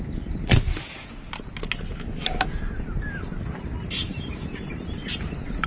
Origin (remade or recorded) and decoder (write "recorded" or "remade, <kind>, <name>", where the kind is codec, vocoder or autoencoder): recorded